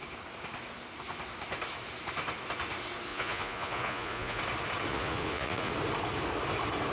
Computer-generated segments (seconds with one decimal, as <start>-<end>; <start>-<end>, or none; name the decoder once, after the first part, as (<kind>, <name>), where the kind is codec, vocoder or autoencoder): 3.1-4.4 (vocoder, Vocos); 4.9-5.7